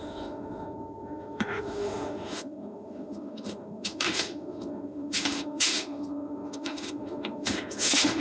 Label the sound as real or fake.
fake